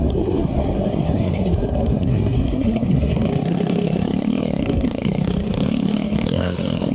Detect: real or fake fake